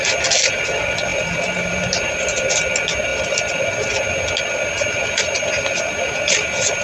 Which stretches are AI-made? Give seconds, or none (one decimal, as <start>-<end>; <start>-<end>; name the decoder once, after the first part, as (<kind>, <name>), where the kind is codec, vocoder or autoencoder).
none